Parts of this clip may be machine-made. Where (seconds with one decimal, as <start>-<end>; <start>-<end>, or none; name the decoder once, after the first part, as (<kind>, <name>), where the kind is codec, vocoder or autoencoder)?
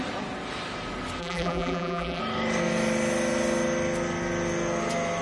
1.2-2.2 (vocoder, BigVGAN v2)